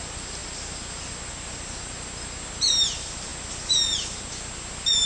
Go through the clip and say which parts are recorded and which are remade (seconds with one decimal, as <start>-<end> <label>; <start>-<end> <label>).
0.0-5.1 recorded